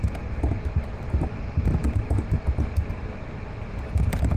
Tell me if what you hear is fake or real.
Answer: real